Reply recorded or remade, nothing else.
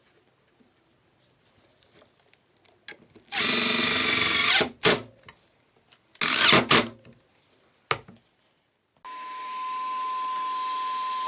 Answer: recorded